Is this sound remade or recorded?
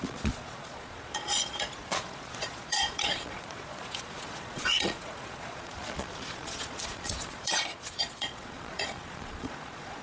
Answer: remade